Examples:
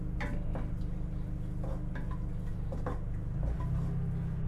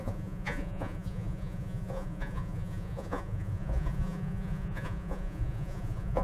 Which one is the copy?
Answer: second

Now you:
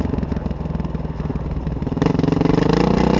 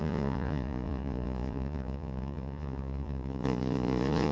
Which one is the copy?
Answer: second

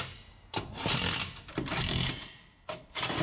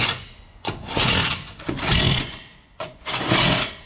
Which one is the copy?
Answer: second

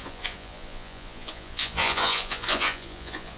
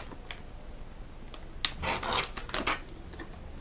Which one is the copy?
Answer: first